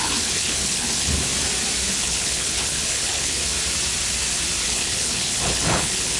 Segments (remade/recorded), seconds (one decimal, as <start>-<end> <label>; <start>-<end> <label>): 0.0-1.3 remade; 1.3-1.9 recorded; 1.9-3.4 remade; 3.4-4.6 recorded; 4.6-6.2 remade